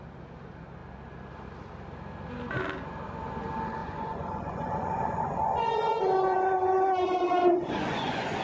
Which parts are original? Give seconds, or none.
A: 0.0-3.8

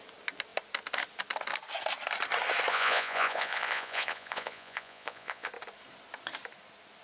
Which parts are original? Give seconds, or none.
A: 0.0-2.7; 5.5-7.0

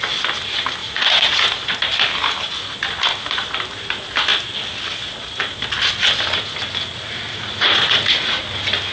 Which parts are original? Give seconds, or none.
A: 0.0-0.8; 1.8-7.3; 8.4-8.9

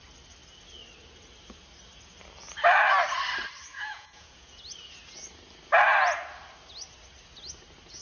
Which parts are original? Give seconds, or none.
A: 0.0-3.7; 4.6-8.0

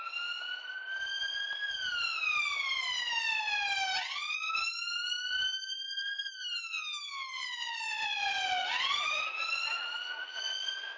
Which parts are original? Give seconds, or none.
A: 0.0-8.6; 10.4-11.0